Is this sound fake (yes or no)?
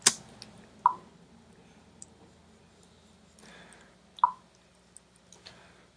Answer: no